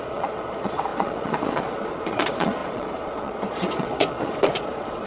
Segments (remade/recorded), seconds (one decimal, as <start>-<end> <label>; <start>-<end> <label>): 0.0-5.1 remade